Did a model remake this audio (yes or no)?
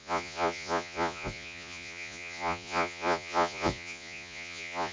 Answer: yes